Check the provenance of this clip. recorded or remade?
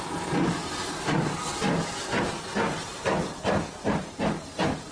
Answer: recorded